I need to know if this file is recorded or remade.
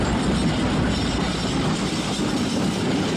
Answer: recorded